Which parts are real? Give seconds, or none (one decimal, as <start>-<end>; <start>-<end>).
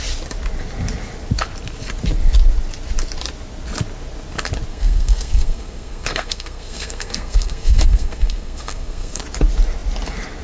0.0-4.7; 9.2-10.4